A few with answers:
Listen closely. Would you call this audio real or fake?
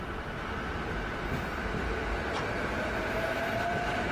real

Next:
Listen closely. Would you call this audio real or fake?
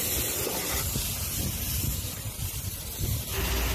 real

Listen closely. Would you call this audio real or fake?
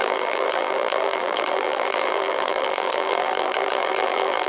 fake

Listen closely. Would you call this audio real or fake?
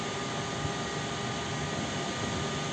real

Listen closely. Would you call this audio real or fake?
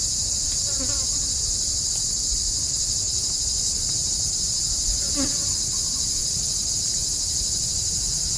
real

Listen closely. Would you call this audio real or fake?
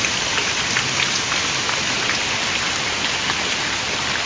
fake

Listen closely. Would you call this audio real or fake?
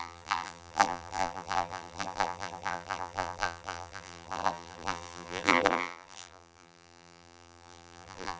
fake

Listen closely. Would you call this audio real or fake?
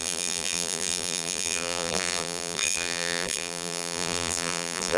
fake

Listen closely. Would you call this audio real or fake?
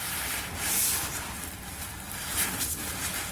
fake